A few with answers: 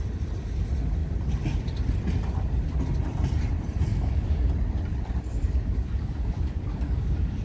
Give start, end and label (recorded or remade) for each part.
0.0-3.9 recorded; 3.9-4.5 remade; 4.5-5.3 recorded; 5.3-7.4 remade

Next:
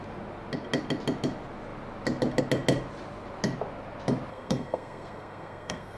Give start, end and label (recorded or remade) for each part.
0.0-4.3 recorded; 4.3-6.0 remade

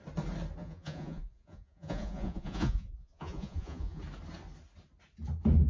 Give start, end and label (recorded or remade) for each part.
0.0-0.6 recorded; 0.6-4.0 remade; 4.0-5.7 recorded

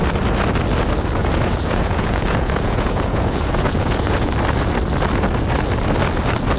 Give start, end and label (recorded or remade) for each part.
0.0-1.2 recorded; 1.2-4.3 remade; 4.3-6.6 recorded

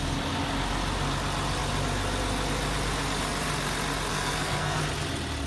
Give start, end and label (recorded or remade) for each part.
0.0-4.1 recorded; 4.1-4.8 remade; 4.8-5.5 recorded

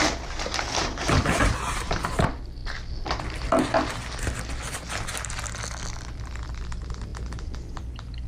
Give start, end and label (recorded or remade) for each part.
0.0-2.6 remade; 2.6-6.1 recorded; 6.1-8.3 remade

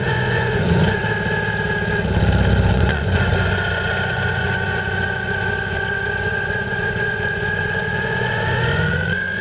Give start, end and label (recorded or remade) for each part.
0.0-1.0 remade; 1.0-2.7 recorded; 2.7-9.4 remade